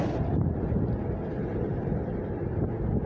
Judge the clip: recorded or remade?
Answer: recorded